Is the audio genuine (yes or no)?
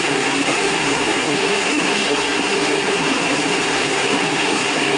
no